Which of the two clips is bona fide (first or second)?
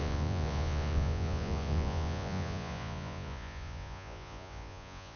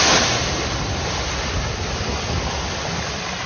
second